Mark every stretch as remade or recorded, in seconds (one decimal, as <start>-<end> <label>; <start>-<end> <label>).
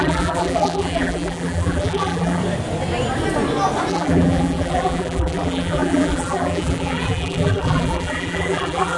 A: 0.0-2.4 remade; 2.4-3.9 recorded; 3.9-9.0 remade